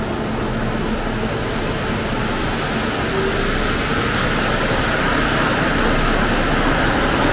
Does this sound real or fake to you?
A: real